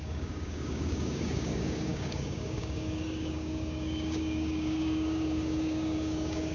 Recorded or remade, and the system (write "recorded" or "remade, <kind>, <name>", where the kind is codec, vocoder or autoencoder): remade, codec, DAC